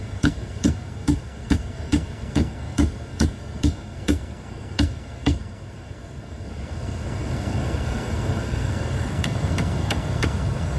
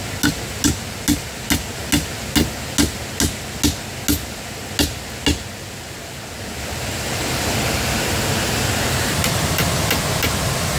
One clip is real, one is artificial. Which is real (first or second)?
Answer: second